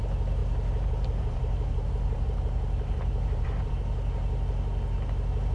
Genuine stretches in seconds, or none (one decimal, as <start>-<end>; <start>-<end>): 0.0-0.4; 3.7-5.5